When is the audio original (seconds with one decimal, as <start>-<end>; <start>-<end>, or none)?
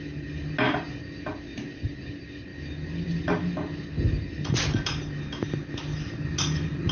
0.0-6.9